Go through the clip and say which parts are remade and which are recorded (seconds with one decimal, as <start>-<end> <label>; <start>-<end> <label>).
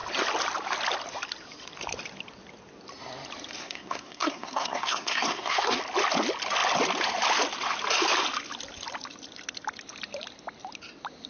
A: 0.0-3.6 recorded; 3.6-5.8 remade; 5.8-11.3 recorded